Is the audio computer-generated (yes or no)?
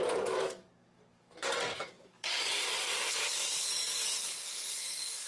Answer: yes